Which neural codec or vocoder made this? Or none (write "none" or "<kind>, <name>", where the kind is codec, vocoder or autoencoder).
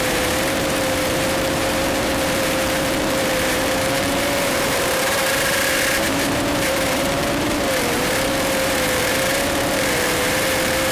vocoder, BigVGAN v2